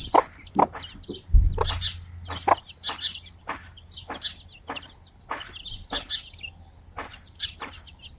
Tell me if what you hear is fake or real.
real